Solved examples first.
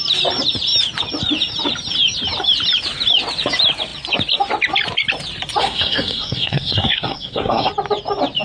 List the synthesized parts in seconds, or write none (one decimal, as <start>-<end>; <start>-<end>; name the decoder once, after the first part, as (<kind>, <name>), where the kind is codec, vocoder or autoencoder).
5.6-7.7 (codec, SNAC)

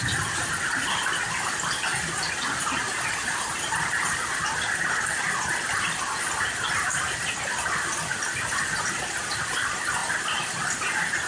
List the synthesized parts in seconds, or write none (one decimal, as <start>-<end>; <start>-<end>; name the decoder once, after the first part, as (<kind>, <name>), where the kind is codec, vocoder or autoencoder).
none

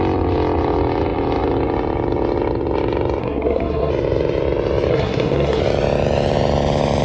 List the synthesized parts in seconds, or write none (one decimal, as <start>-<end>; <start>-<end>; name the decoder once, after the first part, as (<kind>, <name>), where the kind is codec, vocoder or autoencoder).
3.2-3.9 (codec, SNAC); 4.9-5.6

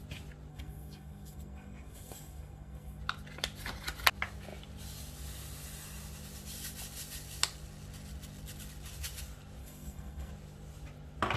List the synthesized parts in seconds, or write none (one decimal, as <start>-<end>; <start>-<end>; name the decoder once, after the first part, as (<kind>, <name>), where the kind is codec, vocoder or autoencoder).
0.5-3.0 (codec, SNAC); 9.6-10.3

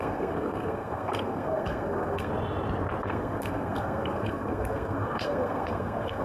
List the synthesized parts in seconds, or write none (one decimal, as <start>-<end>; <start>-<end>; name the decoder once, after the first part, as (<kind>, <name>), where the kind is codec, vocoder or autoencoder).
0.0-2.3 (codec, SNAC); 3.0-6.2

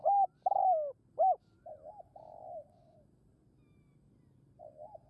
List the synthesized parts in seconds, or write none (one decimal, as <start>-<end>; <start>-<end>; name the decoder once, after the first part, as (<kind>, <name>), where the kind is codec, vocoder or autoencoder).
none

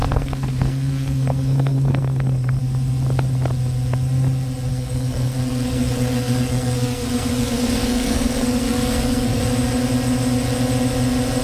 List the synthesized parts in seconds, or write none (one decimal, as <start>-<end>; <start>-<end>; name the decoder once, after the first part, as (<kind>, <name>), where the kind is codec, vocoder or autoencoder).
0.0-2.6 (codec, SNAC); 4.7-9.4

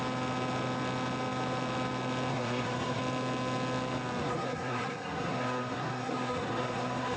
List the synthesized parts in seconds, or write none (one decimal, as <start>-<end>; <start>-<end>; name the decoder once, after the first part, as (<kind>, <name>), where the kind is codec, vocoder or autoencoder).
2.3-3.0 (codec, SNAC); 4.2-7.2